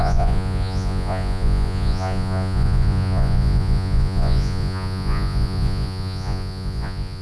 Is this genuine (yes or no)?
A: no